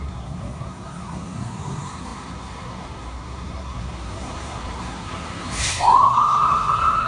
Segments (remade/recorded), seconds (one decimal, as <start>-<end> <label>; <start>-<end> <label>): 0.0-7.1 remade